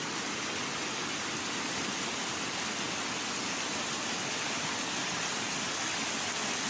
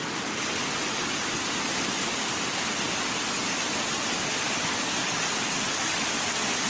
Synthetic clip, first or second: second